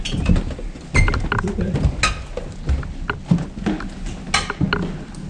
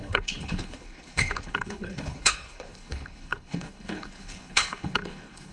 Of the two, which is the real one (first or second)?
first